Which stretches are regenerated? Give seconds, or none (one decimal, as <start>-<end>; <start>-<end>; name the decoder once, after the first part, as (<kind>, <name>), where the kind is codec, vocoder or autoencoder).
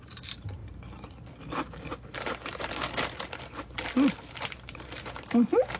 0.0-0.6 (vocoder, BigVGAN v2); 4.1-5.8